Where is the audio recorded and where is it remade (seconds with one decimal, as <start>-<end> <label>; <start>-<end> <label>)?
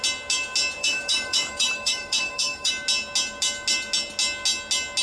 0.0-0.8 recorded; 0.8-2.7 remade; 2.7-5.0 recorded